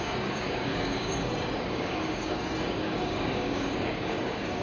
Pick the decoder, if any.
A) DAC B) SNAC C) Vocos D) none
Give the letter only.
A